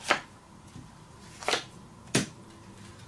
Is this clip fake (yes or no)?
yes